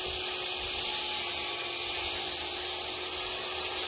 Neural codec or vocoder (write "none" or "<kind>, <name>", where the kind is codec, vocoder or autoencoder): none